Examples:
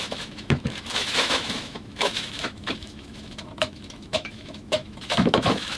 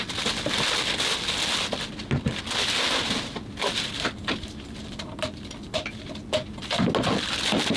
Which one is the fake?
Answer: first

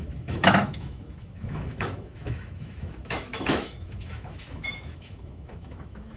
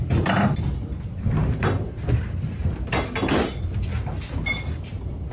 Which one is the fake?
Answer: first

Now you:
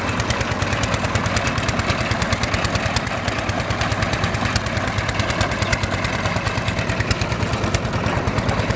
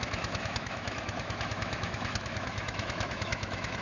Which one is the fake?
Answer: second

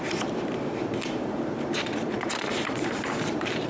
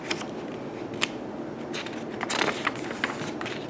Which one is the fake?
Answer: first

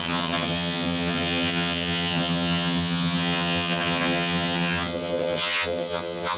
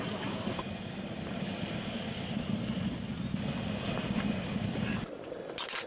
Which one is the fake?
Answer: first